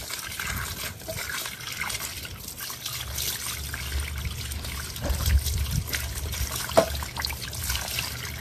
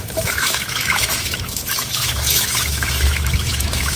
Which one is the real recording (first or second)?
first